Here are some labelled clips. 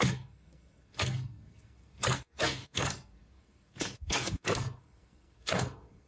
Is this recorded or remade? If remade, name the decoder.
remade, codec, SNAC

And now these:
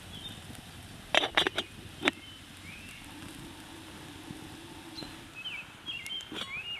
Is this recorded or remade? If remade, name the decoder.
recorded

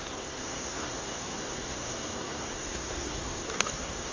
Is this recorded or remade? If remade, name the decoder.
remade, codec, SNAC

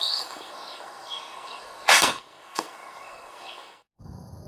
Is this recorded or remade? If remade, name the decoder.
remade, codec, SNAC